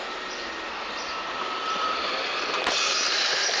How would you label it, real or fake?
real